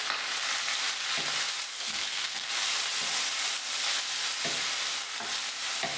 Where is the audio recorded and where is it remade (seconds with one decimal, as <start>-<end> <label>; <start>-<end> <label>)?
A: 0.0-1.7 recorded; 1.7-2.5 remade; 2.5-6.0 recorded